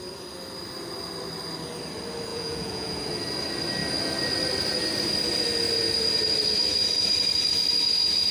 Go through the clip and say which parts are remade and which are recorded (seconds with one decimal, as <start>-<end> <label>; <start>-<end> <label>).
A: 0.0-2.3 recorded; 2.3-3.0 remade; 3.0-8.3 recorded